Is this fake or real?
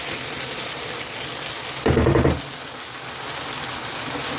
real